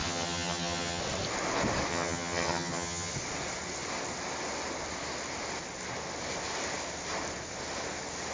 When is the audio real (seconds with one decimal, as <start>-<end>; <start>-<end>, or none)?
1.0-1.9; 3.1-8.3

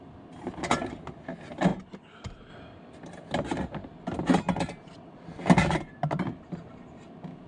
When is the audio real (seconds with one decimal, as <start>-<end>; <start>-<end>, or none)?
0.0-7.5

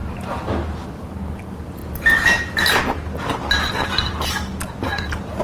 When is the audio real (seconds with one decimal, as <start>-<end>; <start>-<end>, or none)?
0.0-5.4

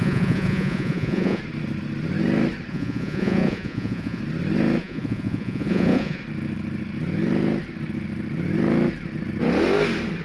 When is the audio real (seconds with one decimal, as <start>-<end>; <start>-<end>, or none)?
1.4-2.7; 4.2-4.8; 6.2-10.2

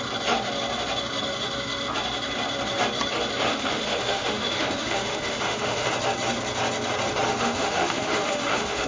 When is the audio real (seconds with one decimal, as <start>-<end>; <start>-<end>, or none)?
0.0-3.5; 5.9-7.3

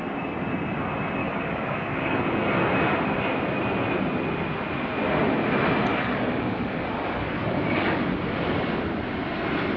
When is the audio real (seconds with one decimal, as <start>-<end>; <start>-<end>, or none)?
0.0-1.2; 2.2-5.9; 8.0-9.8

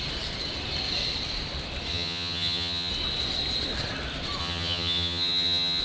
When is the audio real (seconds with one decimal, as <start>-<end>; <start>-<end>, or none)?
0.0-1.9; 2.9-4.4

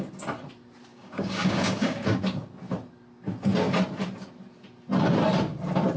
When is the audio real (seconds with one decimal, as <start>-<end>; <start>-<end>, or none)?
0.0-0.9; 2.2-6.0